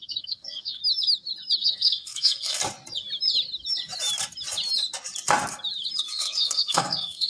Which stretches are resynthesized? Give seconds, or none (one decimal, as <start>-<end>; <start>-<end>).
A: 0.0-0.8; 1.6-2.6; 6.1-7.3